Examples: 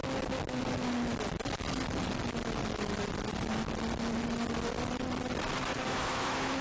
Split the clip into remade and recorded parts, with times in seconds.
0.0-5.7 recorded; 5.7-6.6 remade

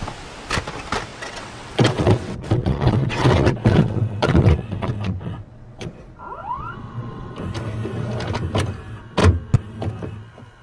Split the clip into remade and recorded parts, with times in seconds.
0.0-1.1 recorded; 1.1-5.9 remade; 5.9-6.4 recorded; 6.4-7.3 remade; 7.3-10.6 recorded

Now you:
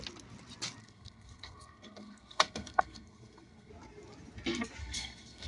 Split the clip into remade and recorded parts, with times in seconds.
0.0-0.8 recorded; 0.8-3.7 remade; 3.7-4.8 recorded; 4.8-5.5 remade

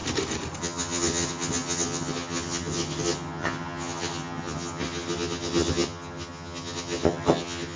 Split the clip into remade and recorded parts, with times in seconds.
0.0-0.6 recorded; 0.6-7.8 remade